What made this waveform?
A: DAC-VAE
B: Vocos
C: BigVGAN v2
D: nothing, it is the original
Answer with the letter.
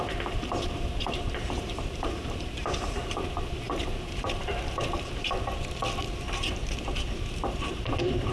C